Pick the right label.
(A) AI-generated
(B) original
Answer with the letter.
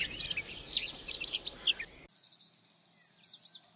B